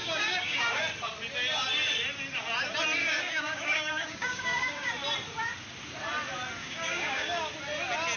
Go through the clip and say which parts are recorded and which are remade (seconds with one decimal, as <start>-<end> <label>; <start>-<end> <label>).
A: 0.0-0.8 remade; 0.8-3.0 recorded; 3.0-4.9 remade; 4.9-6.6 recorded; 6.6-7.5 remade; 7.5-8.2 recorded